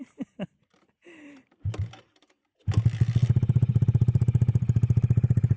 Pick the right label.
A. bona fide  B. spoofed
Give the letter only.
B